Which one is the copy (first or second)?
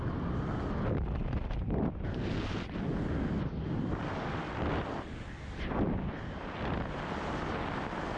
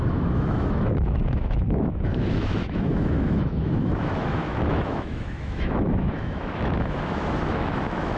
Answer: second